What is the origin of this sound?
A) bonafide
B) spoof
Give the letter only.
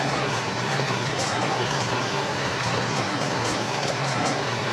B